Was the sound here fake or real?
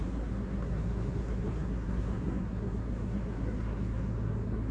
fake